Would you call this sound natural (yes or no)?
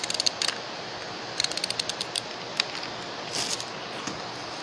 yes